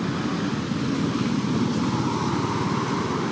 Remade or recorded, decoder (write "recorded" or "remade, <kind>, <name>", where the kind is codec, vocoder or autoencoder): recorded